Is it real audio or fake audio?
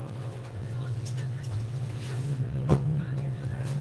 fake